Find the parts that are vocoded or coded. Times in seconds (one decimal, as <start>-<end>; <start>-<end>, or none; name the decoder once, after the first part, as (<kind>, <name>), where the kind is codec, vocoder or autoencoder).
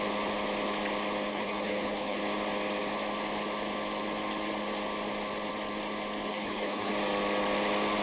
1.3-2.2 (codec, HILCodec); 6.3-6.9